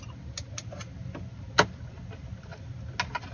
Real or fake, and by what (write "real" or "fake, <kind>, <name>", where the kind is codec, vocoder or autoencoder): real